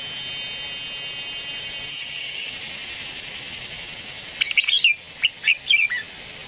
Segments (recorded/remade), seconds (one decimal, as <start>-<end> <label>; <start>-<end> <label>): 0.0-1.9 recorded; 1.9-2.5 remade; 2.5-6.5 recorded

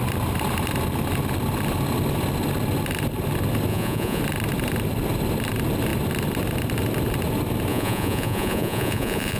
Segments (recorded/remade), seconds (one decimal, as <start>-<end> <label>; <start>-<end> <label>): 0.0-3.7 recorded; 3.7-4.2 remade; 4.2-7.7 recorded; 7.7-9.4 remade

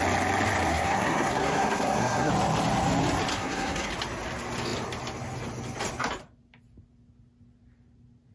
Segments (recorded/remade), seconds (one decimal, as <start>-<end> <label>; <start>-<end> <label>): 0.0-0.7 recorded; 0.7-2.3 remade; 2.3-3.3 recorded; 3.3-3.9 remade; 3.9-8.3 recorded

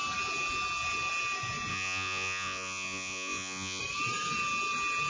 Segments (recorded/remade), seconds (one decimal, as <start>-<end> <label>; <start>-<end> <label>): 0.0-1.7 recorded; 1.7-3.8 remade; 3.8-5.1 recorded

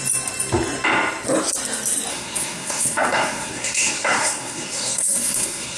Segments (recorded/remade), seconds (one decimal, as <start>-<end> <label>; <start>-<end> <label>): 0.0-2.1 recorded; 2.1-5.8 remade